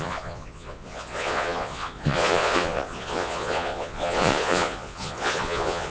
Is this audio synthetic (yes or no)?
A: yes